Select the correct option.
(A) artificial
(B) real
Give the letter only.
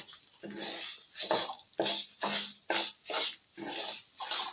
B